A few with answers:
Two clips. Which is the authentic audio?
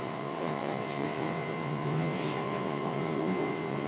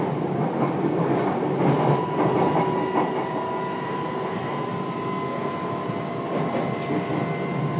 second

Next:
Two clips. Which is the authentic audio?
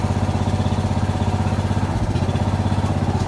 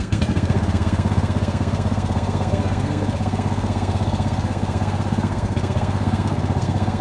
first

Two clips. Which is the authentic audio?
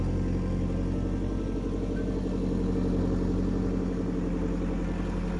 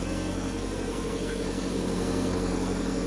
first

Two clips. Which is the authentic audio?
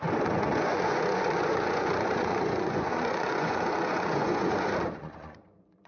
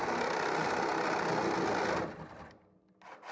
second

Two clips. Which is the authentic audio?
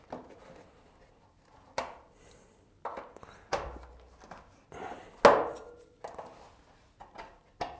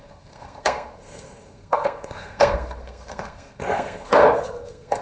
first